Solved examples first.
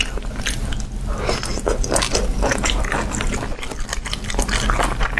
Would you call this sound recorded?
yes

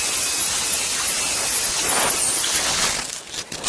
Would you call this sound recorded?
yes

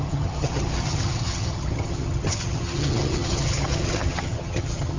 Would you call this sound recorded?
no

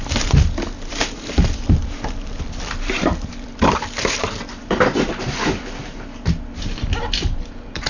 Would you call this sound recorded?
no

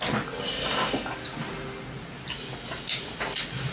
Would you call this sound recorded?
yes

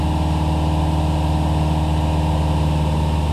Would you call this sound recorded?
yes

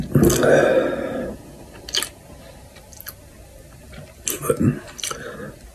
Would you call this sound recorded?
yes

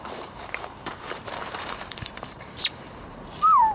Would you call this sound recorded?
no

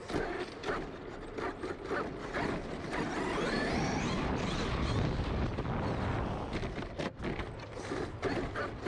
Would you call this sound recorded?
yes